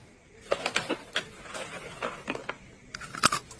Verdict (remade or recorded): remade